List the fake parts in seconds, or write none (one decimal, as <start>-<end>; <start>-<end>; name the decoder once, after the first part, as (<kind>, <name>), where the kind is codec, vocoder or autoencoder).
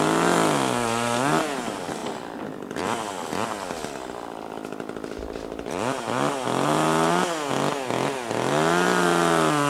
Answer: none